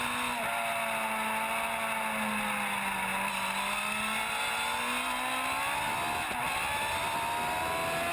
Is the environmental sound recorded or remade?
recorded